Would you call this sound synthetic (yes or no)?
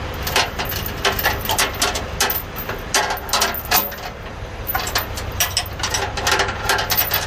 no